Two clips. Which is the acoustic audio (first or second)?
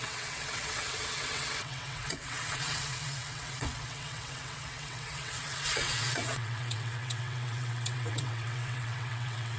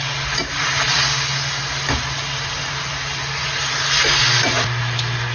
second